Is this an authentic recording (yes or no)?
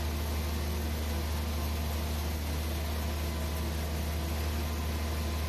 yes